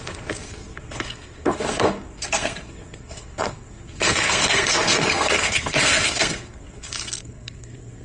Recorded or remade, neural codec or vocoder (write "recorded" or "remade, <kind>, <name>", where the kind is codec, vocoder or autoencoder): remade, codec, SNAC